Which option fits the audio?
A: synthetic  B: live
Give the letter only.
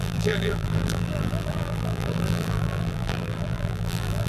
A